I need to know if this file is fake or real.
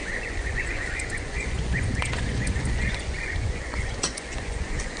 fake